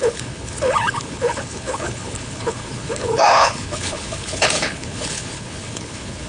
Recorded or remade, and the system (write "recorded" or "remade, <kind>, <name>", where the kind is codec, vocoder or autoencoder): remade, codec, HILCodec